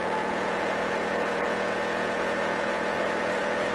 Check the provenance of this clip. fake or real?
fake